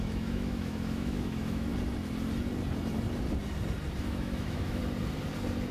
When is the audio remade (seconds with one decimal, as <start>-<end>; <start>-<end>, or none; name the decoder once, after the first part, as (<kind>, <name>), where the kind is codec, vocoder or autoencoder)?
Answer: 0.0-1.7 (autoencoder, DAC-VAE); 4.0-4.8